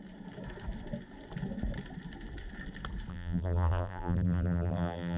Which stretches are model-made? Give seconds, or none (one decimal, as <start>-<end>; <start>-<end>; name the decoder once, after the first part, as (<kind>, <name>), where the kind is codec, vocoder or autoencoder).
3.1-5.2 (vocoder, BigVGAN v2)